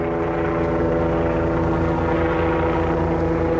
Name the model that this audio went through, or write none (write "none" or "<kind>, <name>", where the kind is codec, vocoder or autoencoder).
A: none